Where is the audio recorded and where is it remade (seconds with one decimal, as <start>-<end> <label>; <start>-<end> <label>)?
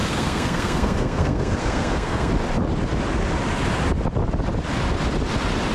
0.0-2.3 remade; 2.3-5.7 recorded